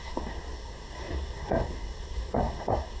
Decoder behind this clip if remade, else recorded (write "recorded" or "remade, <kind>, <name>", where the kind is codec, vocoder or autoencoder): remade, codec, SNAC